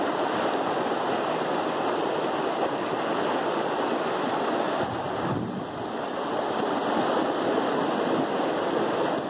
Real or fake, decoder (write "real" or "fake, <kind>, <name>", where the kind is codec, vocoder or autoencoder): real